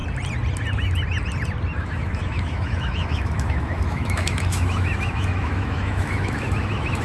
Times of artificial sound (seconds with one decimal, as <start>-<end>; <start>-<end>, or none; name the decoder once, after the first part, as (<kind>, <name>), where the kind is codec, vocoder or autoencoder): 1.8-7.0 (autoencoder, DAC-VAE)